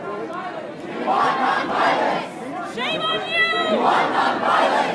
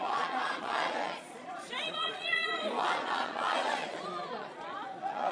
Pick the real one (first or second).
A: first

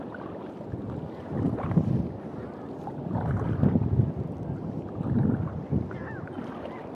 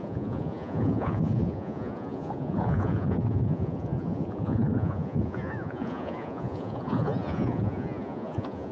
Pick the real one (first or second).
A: first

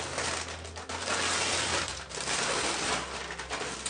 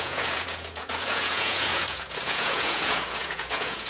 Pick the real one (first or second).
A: first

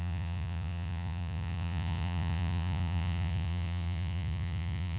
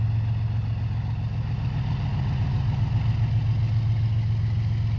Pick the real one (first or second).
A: second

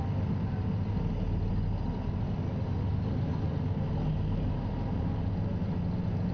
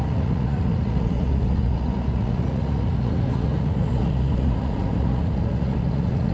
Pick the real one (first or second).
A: first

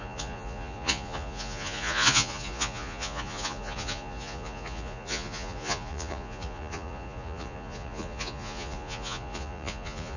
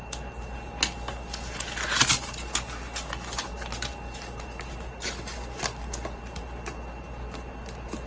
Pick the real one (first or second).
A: second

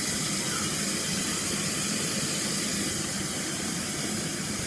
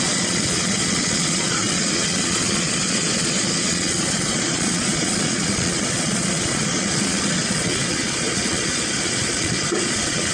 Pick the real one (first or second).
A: first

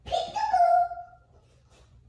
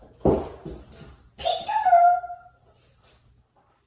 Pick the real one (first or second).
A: second